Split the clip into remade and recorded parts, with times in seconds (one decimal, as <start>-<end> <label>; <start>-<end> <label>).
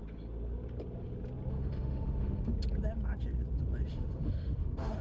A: 0.0-1.5 recorded; 1.5-2.5 remade; 2.5-3.9 recorded; 3.9-5.0 remade